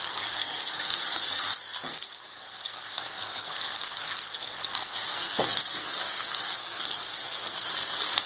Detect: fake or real fake